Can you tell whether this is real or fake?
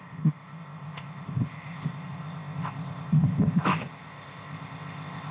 fake